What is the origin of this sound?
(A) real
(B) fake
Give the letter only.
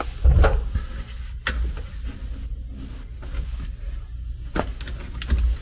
A